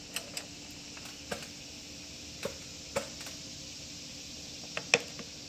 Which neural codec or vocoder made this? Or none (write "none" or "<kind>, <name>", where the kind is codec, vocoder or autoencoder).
none